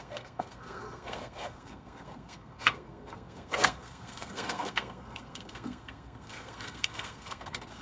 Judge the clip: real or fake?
fake